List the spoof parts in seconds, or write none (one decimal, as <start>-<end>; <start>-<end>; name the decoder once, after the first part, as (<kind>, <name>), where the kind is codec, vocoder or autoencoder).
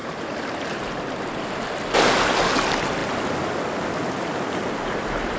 none